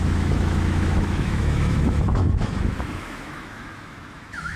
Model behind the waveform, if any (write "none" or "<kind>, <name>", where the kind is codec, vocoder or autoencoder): autoencoder, DAC-VAE